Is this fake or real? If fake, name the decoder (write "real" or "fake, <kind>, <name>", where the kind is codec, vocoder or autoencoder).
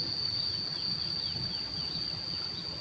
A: real